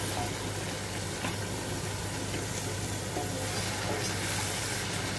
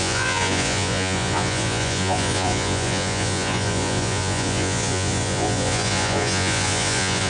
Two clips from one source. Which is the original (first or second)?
first